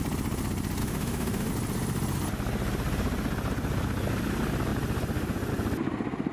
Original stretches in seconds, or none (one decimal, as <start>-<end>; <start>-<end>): 0.0-0.8; 1.5-6.3